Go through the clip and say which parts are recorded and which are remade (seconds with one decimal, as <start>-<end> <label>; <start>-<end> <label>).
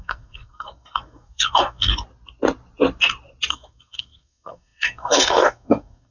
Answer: 0.0-1.9 remade; 1.9-3.5 recorded; 3.5-6.1 remade